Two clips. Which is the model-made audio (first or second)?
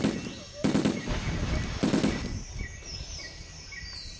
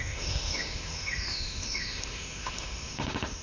second